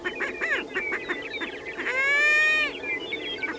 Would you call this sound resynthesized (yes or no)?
no